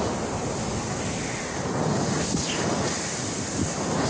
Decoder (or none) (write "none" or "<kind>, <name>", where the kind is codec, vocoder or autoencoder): vocoder, BigVGAN v2